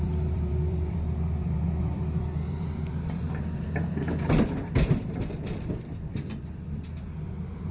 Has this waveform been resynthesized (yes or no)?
yes